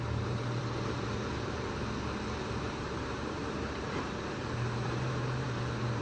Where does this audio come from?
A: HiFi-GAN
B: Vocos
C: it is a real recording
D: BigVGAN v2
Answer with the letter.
D